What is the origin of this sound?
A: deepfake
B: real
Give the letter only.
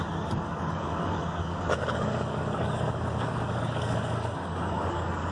A